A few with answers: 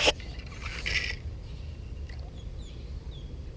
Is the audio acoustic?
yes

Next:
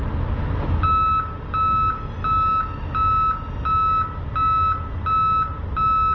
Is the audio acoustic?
yes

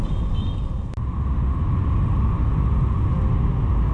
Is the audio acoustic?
yes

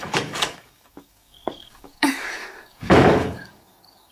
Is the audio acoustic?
no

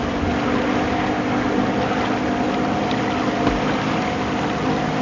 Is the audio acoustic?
yes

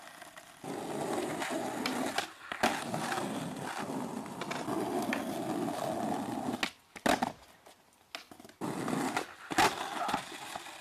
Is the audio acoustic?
yes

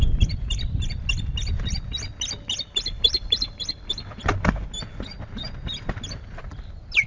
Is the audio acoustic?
yes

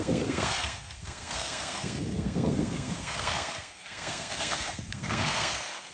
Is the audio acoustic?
no